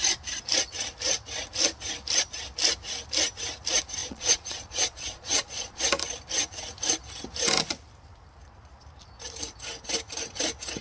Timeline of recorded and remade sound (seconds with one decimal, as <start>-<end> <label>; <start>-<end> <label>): 0.0-4.0 recorded; 4.0-5.8 remade; 5.8-10.8 recorded